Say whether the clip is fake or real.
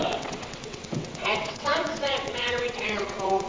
fake